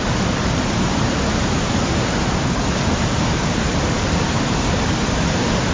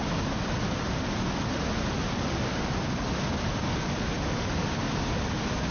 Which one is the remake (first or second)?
first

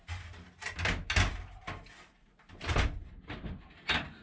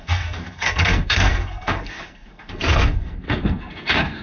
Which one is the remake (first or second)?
second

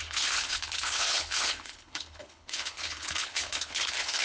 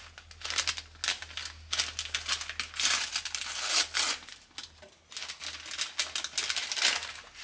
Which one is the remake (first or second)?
first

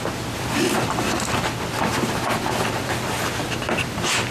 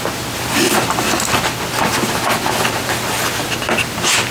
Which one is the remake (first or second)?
first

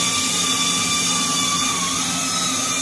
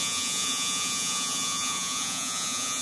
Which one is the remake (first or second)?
second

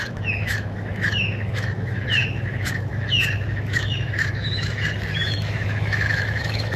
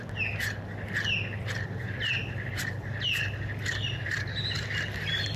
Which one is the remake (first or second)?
first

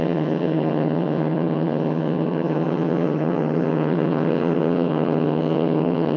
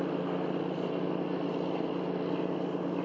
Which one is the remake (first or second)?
first